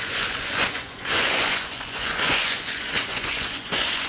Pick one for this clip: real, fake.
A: fake